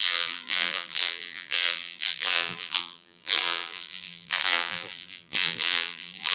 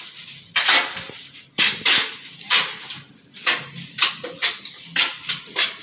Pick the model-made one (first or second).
first